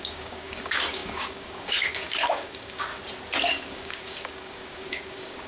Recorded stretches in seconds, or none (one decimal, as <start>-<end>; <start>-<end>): 2.9-3.5